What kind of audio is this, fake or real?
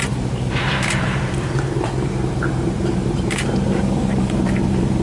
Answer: fake